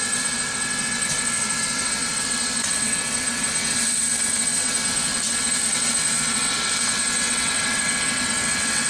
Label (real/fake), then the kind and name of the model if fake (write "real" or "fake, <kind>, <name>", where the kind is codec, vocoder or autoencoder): fake, vocoder, WaveNeXt